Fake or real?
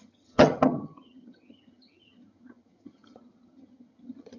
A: fake